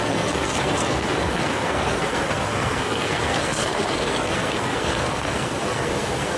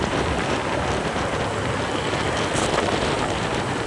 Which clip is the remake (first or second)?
first